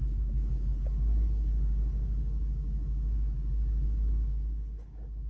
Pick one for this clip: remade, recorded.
remade